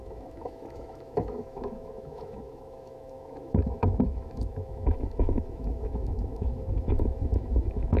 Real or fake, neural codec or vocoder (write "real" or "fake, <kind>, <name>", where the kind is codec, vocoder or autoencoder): fake, autoencoder, DAC-VAE